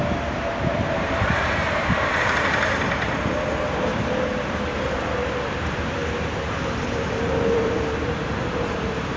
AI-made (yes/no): yes